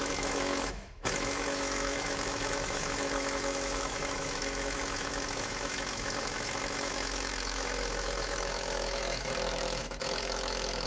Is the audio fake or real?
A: fake